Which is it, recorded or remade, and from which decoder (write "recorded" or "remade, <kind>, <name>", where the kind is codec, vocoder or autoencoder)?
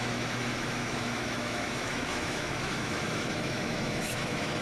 remade, autoencoder, DAC-VAE